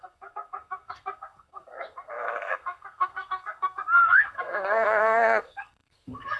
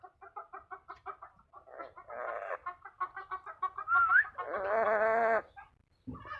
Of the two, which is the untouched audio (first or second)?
second